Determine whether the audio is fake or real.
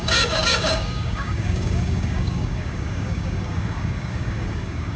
fake